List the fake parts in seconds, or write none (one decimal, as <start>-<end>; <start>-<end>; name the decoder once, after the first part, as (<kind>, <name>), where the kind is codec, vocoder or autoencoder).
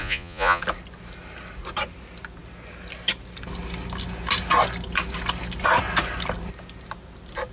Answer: 0.0-0.6 (vocoder, Vocos)